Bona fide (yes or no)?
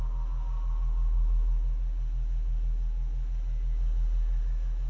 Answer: yes